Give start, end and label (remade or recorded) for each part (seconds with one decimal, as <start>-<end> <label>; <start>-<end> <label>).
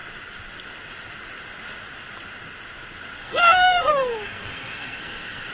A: 0.0-3.2 recorded; 3.2-5.5 remade